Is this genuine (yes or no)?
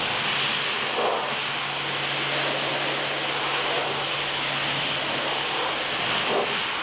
yes